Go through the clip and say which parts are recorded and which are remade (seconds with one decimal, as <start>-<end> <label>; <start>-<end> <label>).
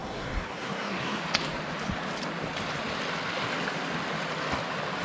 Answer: 0.0-1.2 remade; 1.2-5.0 recorded